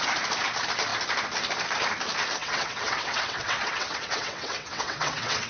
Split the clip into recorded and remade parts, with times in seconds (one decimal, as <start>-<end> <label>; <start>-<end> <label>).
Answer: 0.0-2.4 recorded; 2.4-5.5 remade